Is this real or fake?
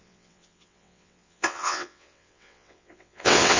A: fake